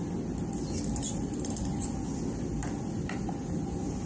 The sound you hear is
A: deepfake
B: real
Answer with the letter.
B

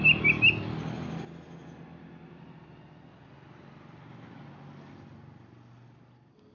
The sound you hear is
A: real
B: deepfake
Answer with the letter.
A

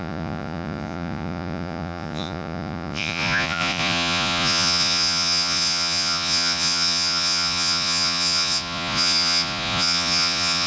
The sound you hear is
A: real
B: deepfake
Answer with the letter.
B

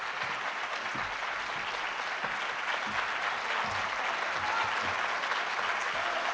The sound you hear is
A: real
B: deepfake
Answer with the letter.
A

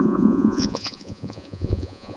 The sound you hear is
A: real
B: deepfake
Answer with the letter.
B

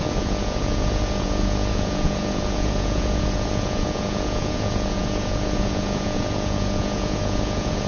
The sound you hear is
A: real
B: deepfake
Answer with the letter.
B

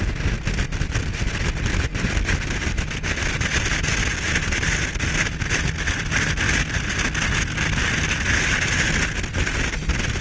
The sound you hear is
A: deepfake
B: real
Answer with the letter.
B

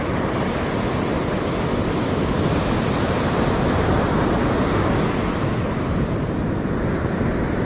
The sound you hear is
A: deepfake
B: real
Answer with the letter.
B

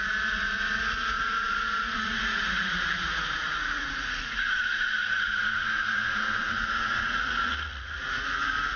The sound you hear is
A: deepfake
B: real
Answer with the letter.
A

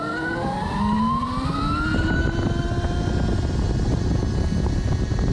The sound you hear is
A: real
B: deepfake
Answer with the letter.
A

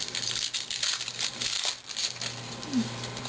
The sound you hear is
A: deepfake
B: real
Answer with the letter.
B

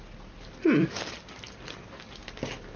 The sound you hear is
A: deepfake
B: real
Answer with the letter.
B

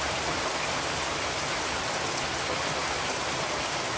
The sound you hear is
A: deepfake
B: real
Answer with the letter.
B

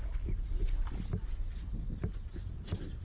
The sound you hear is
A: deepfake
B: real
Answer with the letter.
B